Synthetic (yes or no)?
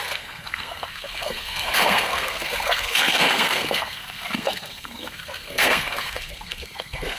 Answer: yes